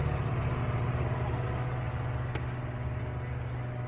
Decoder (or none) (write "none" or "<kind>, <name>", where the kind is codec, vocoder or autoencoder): none